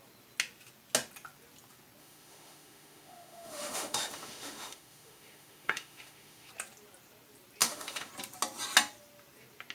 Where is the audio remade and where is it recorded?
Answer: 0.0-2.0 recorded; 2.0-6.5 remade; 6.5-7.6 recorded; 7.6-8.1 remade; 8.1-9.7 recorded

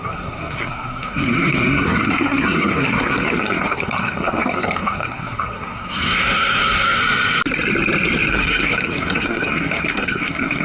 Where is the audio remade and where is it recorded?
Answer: 0.0-7.0 remade; 7.0-8.3 recorded; 8.3-10.6 remade

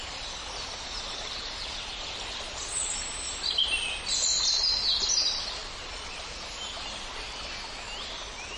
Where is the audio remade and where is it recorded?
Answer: 0.0-3.8 remade; 3.8-5.6 recorded; 5.6-6.7 remade; 6.7-8.6 recorded

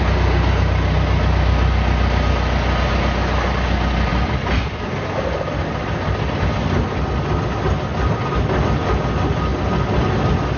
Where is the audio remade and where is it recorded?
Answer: 0.0-4.1 recorded; 4.1-5.9 remade; 5.9-10.6 recorded

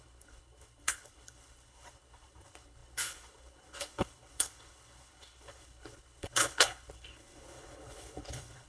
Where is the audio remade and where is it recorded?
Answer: 0.0-8.7 remade

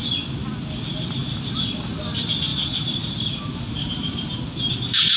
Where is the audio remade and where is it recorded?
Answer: 0.0-1.2 recorded; 1.2-2.0 remade; 2.0-2.5 recorded; 2.5-4.3 remade; 4.3-5.2 recorded